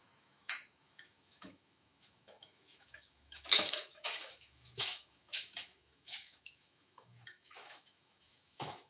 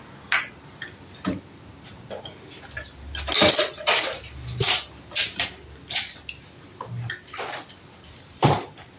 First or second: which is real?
second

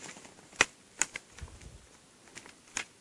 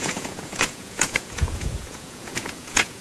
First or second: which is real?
first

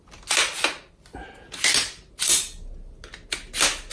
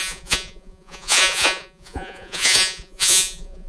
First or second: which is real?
first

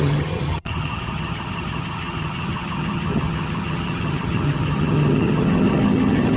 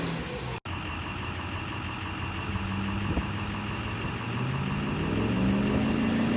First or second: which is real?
second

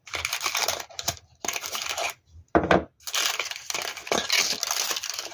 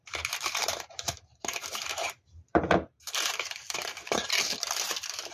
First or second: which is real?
first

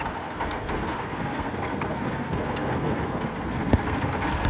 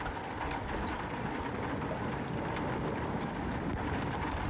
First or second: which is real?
second